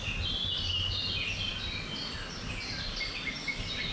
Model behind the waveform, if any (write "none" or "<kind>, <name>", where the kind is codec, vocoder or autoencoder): none